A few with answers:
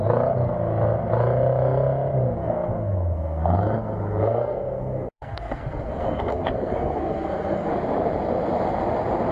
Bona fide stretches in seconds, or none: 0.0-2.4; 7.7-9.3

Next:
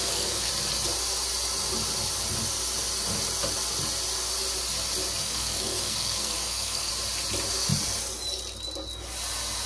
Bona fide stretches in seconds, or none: 0.5-5.2; 6.9-9.7

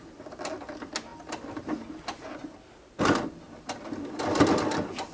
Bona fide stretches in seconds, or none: 0.0-5.1

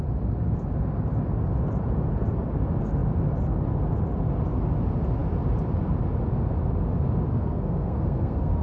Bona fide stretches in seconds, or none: 0.0-7.3

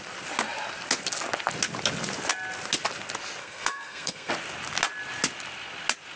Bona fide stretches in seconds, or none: 0.0-3.4; 4.3-6.2